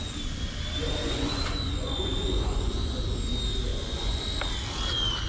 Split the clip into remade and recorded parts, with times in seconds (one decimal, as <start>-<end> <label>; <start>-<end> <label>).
0.0-1.0 recorded; 1.0-3.0 remade; 3.0-3.7 recorded; 3.7-4.2 remade; 4.2-5.3 recorded